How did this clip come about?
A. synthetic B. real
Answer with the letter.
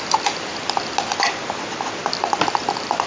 B